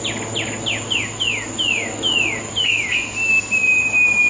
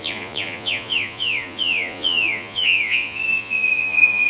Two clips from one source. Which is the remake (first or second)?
second